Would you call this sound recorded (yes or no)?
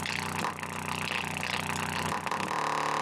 yes